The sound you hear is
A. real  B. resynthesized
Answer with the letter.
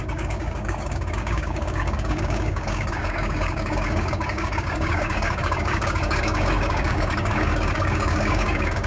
B